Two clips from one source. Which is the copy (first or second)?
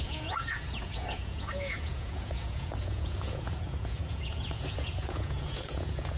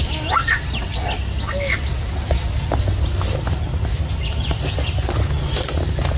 first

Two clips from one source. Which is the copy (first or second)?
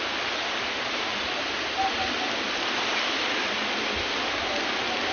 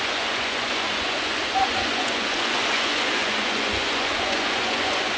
second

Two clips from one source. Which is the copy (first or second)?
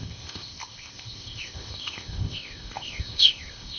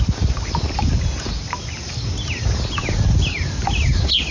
first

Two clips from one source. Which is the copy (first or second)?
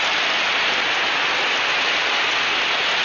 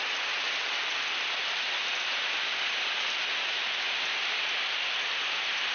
second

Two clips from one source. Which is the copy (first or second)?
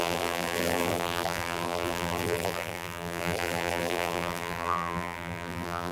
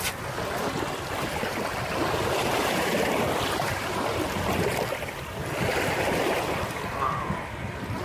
first